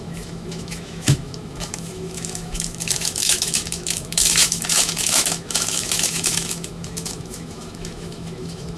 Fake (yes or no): yes